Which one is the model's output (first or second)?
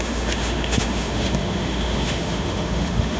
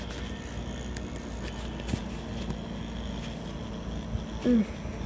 first